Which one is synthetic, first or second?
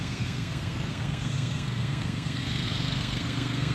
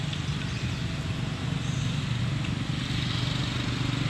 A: first